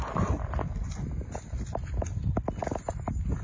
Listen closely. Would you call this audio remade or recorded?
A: recorded